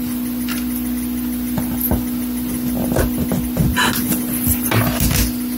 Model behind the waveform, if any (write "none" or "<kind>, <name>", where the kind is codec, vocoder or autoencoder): none